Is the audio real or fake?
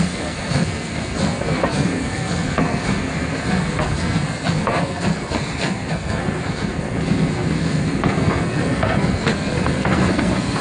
fake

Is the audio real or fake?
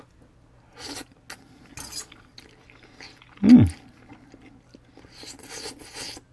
real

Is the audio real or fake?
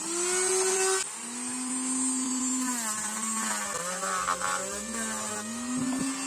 real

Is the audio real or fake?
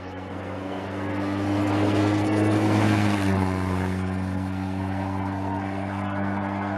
fake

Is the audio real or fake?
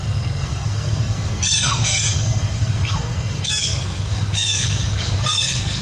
fake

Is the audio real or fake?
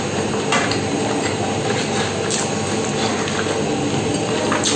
real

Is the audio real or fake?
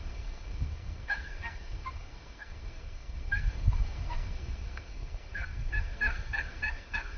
fake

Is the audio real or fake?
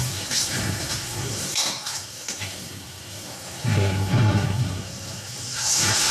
fake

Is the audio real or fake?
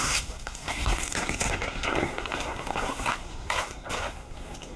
fake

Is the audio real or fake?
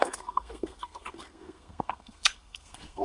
fake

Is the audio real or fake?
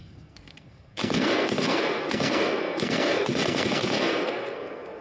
fake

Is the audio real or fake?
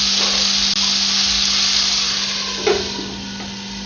real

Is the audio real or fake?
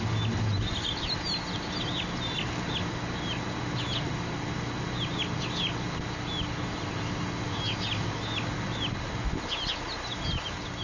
real